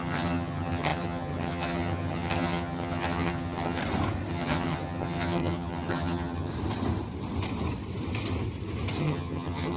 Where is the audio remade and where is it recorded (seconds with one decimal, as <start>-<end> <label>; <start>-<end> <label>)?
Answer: 0.0-3.8 remade; 3.8-4.3 recorded; 4.3-6.5 remade; 6.5-9.0 recorded; 9.0-9.8 remade